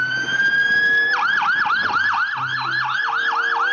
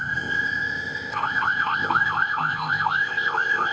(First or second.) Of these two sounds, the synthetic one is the second